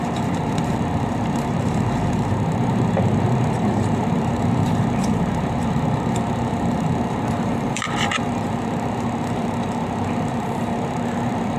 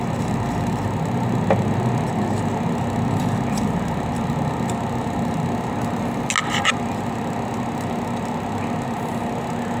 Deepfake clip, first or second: first